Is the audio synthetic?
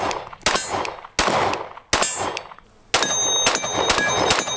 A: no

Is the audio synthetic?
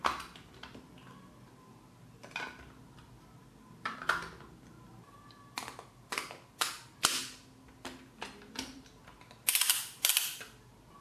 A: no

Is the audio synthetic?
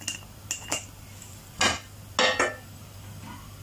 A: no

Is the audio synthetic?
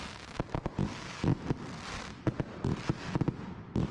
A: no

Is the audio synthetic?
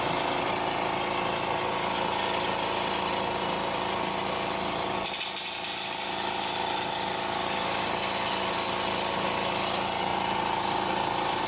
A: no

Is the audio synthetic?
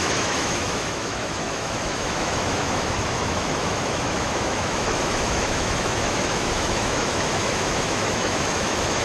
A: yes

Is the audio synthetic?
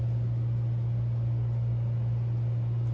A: no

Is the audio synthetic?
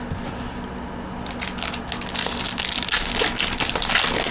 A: no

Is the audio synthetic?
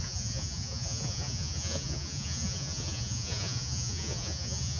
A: yes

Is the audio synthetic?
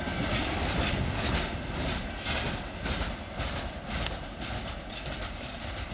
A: no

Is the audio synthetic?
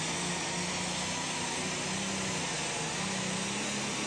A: no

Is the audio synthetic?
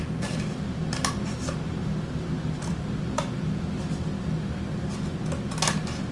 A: no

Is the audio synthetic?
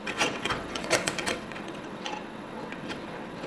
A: yes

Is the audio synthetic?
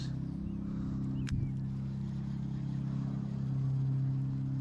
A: no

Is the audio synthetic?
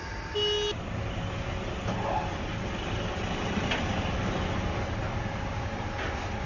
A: no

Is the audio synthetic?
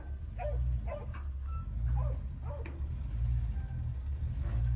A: no